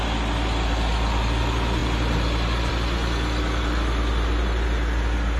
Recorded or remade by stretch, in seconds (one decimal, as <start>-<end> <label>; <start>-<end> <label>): 0.0-5.4 recorded